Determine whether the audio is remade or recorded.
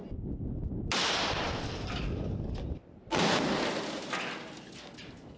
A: recorded